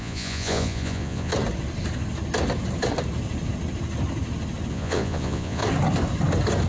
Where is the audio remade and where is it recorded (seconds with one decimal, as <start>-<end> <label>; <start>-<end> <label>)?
0.0-1.3 remade; 1.3-4.7 recorded; 4.7-5.6 remade; 5.6-6.7 recorded